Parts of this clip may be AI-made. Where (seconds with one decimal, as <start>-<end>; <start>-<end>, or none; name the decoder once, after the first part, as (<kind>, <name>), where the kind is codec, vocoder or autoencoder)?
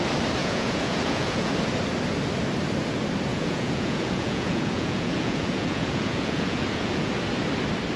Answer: 0.4-1.5 (vocoder, Vocos); 3.3-7.1